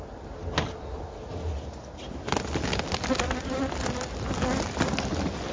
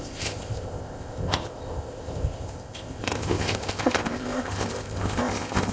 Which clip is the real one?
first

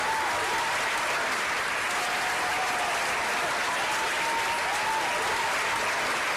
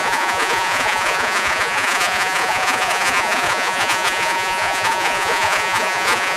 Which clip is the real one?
first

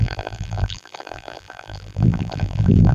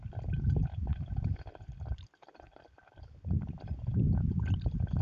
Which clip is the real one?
second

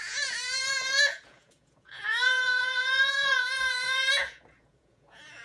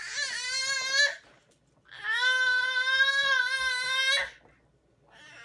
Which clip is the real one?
second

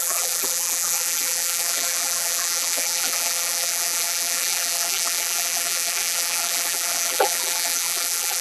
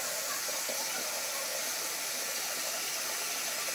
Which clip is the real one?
second